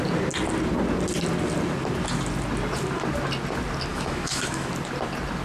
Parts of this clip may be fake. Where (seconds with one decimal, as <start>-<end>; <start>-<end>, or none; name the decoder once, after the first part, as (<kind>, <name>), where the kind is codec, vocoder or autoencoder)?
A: 3.9-4.7 (autoencoder, DAC-VAE)